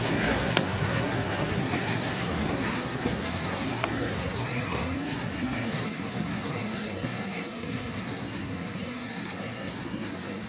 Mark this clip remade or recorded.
remade